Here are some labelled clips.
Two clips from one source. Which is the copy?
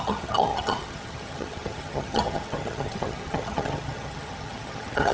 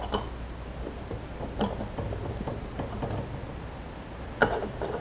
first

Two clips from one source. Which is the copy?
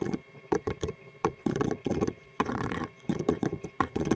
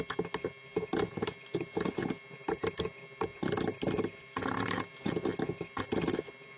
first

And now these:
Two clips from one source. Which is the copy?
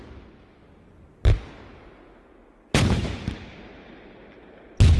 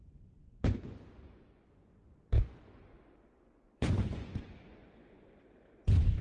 second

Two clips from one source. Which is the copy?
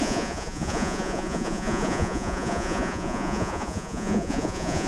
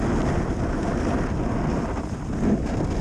first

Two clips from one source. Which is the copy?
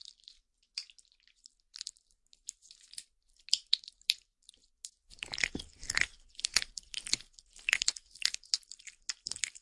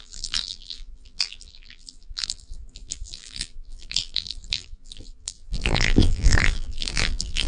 second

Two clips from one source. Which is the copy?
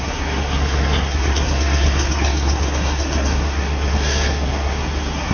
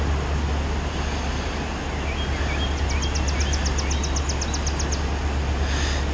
first